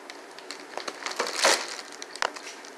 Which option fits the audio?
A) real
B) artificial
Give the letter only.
A